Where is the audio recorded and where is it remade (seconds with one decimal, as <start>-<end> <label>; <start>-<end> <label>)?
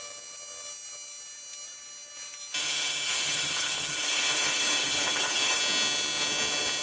0.0-2.6 recorded; 2.6-5.6 remade; 5.6-6.8 recorded